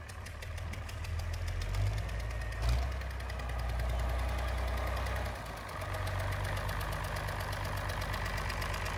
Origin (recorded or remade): recorded